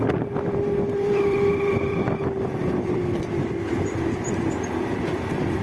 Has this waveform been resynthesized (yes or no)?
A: yes